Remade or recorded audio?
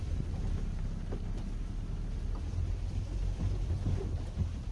recorded